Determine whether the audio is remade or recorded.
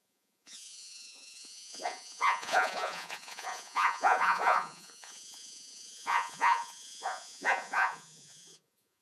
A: remade